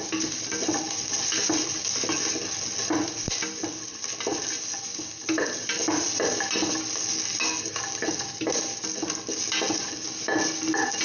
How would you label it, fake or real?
real